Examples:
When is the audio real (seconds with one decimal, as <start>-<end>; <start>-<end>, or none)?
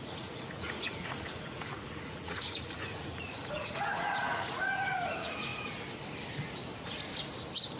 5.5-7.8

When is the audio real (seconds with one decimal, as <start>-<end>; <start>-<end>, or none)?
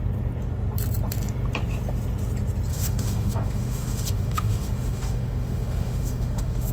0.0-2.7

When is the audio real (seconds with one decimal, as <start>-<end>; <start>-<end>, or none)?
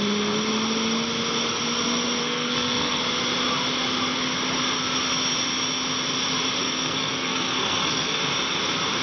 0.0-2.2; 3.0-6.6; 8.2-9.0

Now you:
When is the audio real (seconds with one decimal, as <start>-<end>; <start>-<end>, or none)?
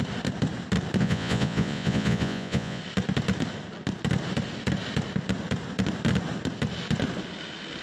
0.0-1.0; 2.8-7.8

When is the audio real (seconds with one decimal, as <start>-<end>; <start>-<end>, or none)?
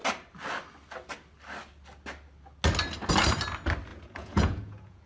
0.0-3.9